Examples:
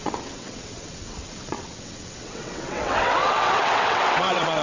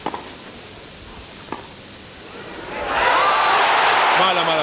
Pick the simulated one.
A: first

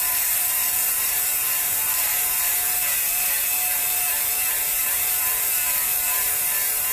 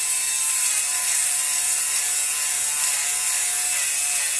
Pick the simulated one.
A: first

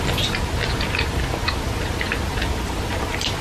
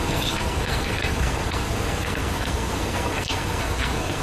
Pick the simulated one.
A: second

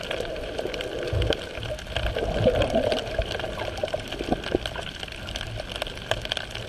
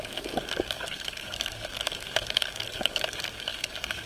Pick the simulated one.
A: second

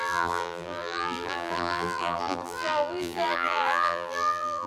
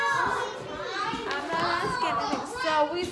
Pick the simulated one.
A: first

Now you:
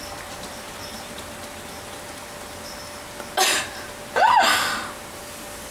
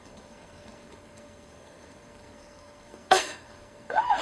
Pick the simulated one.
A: second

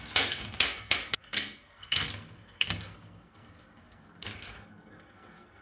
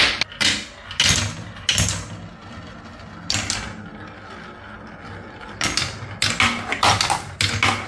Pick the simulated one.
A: first